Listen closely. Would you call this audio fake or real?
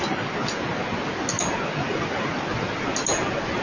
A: real